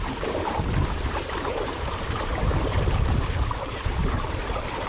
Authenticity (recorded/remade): remade